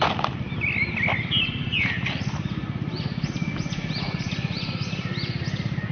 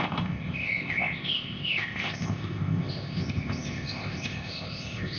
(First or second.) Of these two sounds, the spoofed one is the second